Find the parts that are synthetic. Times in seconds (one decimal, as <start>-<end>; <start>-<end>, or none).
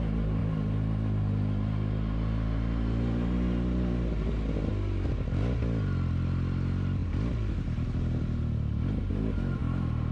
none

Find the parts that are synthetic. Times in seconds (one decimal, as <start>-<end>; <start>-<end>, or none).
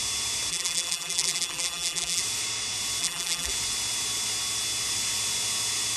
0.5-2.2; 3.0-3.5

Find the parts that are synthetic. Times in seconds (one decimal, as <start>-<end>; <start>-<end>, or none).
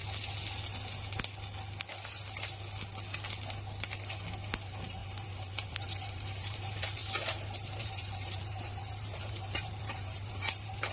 4.5-7.0; 7.8-10.9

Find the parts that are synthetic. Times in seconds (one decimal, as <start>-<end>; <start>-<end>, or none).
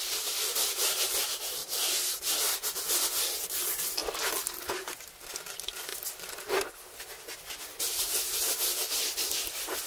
none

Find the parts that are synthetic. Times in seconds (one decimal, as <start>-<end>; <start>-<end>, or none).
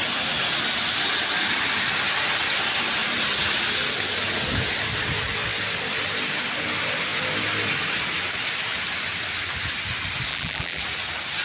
10.3-10.8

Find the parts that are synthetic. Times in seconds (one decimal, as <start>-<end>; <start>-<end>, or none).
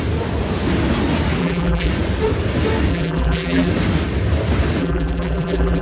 1.4-1.9; 2.9-3.7; 4.8-5.8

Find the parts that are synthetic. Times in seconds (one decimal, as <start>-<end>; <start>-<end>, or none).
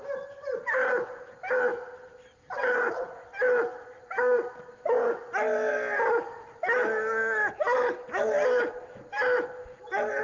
none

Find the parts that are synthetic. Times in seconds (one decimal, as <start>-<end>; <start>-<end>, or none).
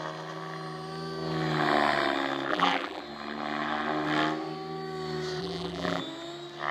2.5-3.0; 5.4-6.0